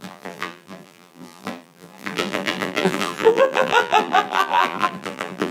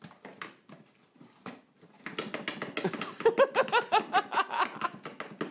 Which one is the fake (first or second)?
first